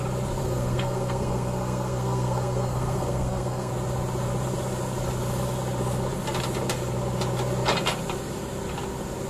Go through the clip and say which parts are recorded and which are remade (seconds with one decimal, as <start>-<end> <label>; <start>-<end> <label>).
0.0-0.4 recorded; 0.4-3.7 remade; 3.7-9.3 recorded